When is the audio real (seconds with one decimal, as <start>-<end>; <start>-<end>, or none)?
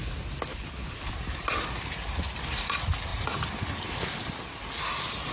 0.0-0.5; 1.1-5.3